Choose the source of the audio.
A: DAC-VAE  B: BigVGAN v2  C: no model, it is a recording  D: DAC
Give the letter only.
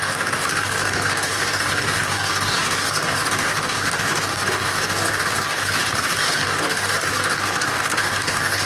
D